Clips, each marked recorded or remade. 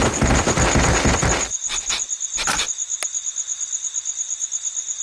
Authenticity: recorded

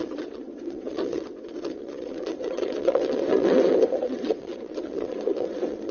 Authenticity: remade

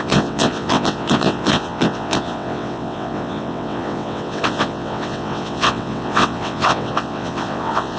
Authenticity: remade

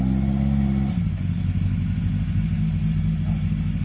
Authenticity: recorded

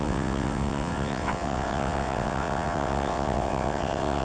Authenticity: remade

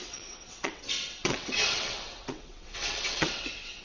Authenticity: remade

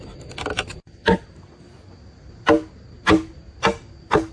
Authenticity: recorded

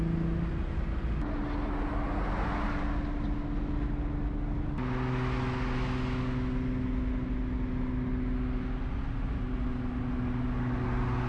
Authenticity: recorded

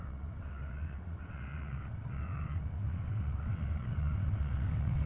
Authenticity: remade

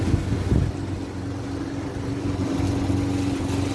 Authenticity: recorded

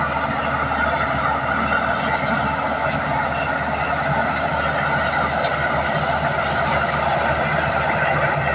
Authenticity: recorded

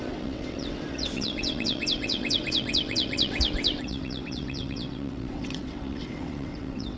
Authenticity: remade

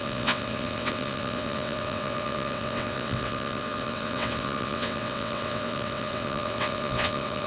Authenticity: remade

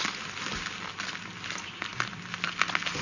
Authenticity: recorded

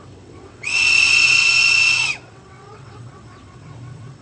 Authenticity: remade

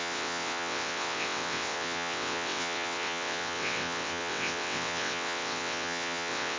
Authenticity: remade